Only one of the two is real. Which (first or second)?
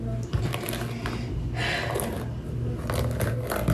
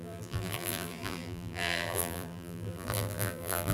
first